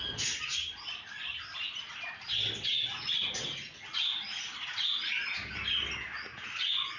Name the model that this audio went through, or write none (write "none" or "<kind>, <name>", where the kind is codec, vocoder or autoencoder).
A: none